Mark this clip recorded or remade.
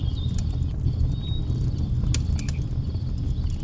recorded